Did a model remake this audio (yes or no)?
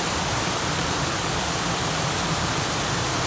yes